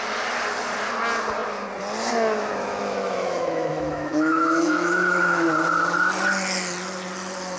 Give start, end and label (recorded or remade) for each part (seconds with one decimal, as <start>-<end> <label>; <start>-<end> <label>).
0.0-2.7 recorded; 2.7-5.5 remade; 5.5-7.6 recorded